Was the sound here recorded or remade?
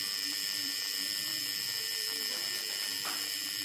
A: remade